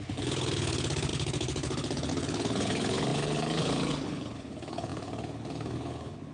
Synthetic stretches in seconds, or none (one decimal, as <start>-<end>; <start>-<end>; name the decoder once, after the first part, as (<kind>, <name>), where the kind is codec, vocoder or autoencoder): 0.0-6.3 (codec, HILCodec)